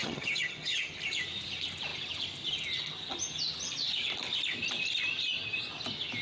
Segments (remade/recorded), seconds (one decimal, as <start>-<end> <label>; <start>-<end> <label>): 0.0-0.9 remade; 0.9-6.2 recorded